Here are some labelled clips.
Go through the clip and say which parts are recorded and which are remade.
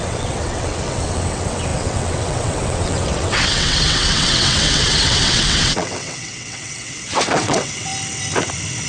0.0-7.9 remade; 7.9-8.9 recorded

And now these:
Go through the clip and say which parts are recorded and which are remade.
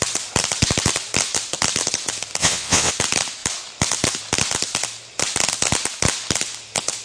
0.0-2.4 recorded; 2.4-2.9 remade; 2.9-7.0 recorded